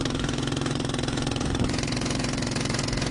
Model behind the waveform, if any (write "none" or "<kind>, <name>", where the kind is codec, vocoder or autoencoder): vocoder, Vocos